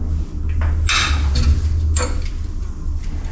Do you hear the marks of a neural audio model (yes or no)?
no